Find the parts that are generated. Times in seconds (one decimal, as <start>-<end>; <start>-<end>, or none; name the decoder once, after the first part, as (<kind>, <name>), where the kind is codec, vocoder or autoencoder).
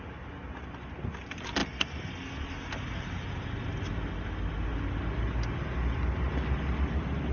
none